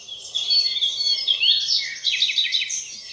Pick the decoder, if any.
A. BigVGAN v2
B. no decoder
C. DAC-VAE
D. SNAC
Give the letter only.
A